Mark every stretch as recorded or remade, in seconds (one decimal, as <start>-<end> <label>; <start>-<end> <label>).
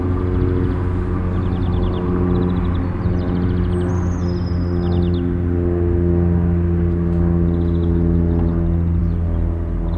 0.0-10.0 recorded